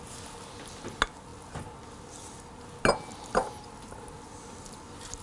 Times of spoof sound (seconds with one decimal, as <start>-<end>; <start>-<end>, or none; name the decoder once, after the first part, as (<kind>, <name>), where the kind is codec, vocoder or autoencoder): none